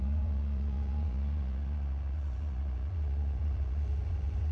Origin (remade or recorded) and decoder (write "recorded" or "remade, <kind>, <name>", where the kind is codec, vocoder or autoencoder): remade, vocoder, Vocos